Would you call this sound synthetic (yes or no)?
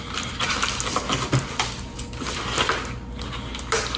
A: no